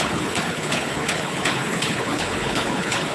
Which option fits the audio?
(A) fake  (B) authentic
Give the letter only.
A